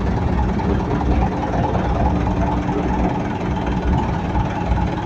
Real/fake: real